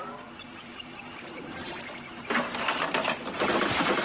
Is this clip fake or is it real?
fake